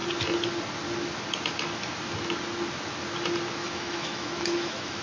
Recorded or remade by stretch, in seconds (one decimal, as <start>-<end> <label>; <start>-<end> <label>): 0.0-3.6 recorded; 3.6-5.0 remade